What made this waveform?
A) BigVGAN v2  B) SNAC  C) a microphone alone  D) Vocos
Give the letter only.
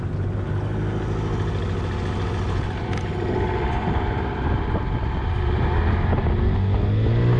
C